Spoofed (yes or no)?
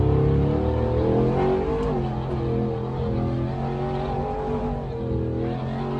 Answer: no